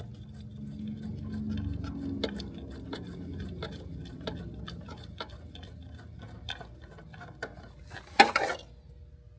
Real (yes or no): yes